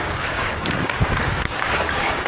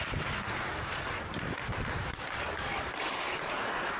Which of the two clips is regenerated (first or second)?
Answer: first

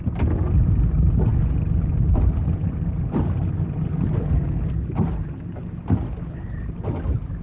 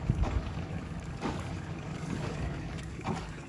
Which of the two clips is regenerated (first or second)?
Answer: second